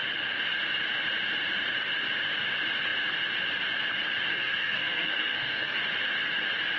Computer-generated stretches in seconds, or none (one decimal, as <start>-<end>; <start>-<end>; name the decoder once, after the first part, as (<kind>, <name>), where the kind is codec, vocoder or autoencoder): 4.3-5.8 (codec, SNAC)